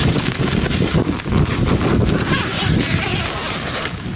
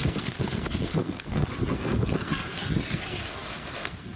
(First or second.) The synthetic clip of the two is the second